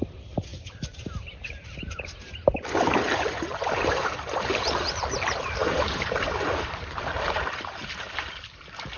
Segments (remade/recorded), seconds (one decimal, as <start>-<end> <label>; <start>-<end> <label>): 0.0-0.5 recorded; 0.5-4.5 remade; 4.5-5.6 recorded; 5.6-7.0 remade; 7.0-9.0 recorded